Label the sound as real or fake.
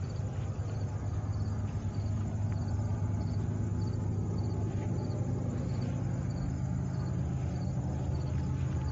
real